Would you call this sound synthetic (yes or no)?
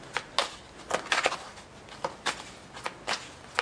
no